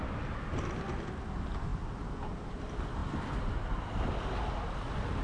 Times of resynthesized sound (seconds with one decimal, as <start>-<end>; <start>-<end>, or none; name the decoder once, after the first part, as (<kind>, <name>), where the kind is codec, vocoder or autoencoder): none